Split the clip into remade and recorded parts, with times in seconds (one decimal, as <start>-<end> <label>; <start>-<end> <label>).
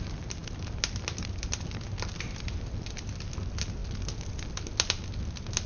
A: 0.0-5.7 recorded